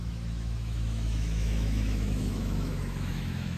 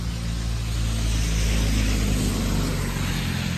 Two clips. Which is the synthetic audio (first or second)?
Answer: first